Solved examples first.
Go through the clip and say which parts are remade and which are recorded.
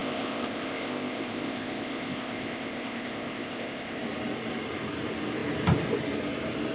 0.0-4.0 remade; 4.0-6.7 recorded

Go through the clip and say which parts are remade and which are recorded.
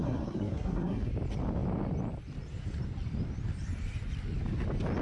0.0-1.1 remade; 1.1-5.0 recorded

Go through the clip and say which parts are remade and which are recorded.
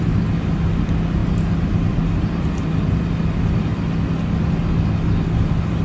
0.0-5.8 recorded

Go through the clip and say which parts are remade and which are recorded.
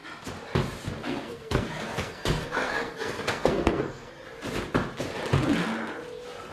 0.0-1.0 recorded; 1.0-4.1 remade; 4.1-6.5 recorded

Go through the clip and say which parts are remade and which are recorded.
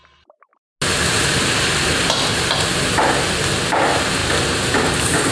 0.0-0.5 remade; 0.5-3.7 recorded; 3.7-5.3 remade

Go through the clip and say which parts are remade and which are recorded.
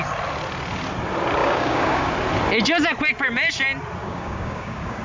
0.0-1.4 recorded; 1.4-2.1 remade; 2.1-4.0 recorded; 4.0-5.0 remade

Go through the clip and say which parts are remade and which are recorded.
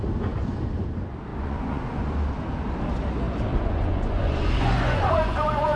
0.0-1.3 recorded; 1.3-2.0 remade; 2.0-3.5 recorded; 3.5-5.8 remade